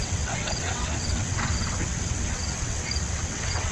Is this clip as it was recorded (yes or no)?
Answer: no